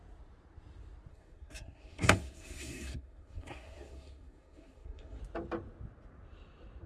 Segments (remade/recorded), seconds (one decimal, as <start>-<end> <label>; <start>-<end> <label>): 0.0-1.1 recorded; 1.1-5.2 remade; 5.2-6.9 recorded